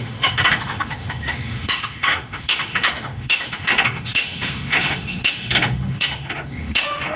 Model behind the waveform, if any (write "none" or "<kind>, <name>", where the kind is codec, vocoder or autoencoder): autoencoder, DAC-VAE